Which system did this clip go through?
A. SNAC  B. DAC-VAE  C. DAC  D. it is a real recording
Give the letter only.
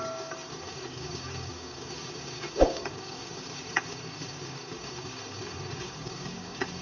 C